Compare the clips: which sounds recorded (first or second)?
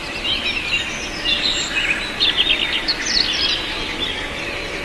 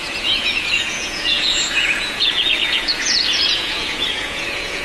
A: first